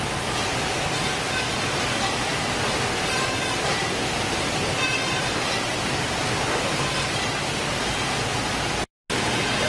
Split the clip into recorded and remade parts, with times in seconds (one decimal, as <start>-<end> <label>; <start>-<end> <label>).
0.0-9.7 recorded